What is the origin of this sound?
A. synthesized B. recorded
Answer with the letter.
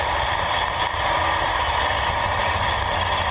B